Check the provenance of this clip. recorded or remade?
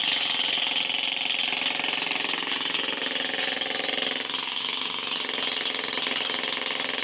recorded